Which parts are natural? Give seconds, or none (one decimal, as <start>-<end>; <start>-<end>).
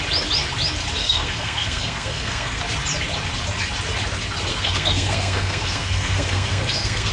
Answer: 0.0-1.0; 2.6-4.5